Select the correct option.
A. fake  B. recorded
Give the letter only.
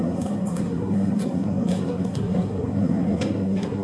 A